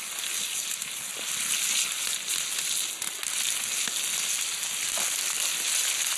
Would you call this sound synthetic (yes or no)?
no